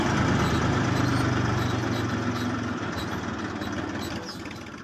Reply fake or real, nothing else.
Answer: real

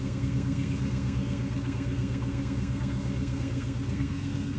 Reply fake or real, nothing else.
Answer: fake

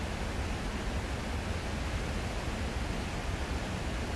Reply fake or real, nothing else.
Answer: real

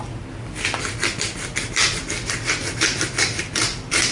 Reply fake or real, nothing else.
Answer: real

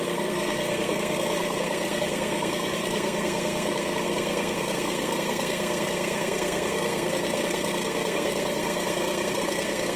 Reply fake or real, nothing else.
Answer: fake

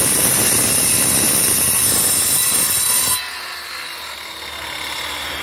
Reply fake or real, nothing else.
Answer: real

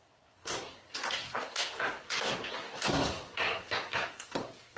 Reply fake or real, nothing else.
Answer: fake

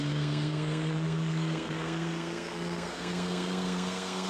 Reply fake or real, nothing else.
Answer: fake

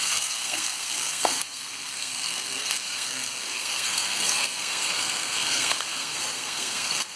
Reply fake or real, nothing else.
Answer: fake